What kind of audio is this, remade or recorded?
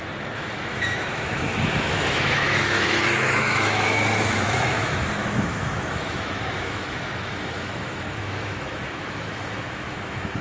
remade